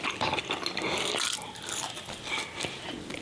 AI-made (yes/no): no